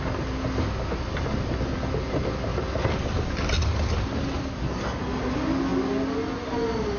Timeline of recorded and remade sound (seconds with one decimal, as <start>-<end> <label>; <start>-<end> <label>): 0.0-7.0 recorded